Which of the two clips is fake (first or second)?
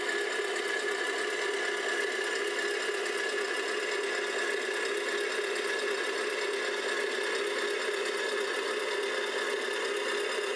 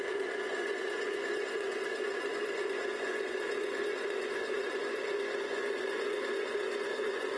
second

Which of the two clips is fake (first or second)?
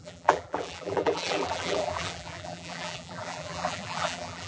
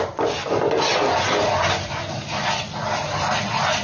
first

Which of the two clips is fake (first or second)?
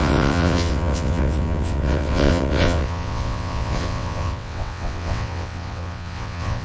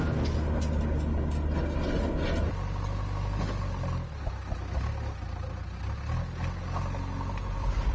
first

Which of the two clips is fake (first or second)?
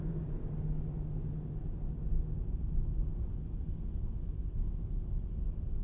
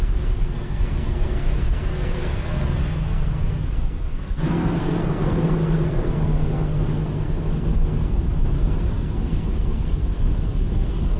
second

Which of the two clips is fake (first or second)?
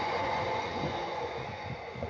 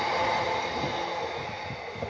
first